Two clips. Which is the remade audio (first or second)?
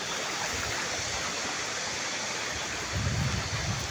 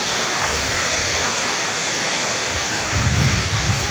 second